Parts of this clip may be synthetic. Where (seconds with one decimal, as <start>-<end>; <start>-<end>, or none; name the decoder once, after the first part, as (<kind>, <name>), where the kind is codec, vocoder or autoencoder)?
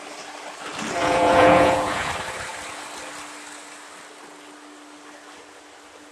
1.0-2.1 (vocoder, Vocos)